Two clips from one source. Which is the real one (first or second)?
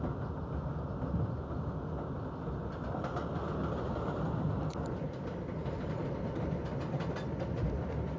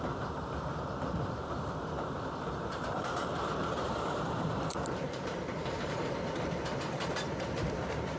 first